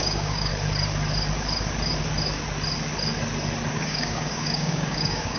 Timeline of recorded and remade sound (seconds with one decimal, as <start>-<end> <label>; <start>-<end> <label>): 0.0-0.5 remade; 0.5-3.7 recorded; 3.7-5.4 remade